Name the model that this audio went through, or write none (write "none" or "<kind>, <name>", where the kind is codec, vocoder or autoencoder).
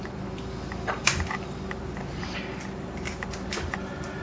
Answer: none